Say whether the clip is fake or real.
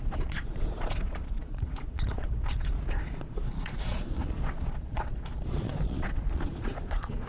fake